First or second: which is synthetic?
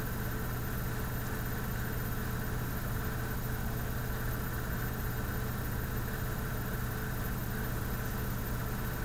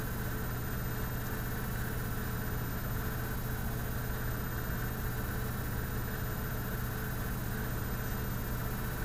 first